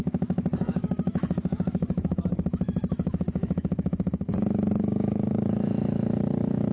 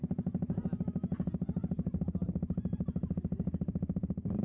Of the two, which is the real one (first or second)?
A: second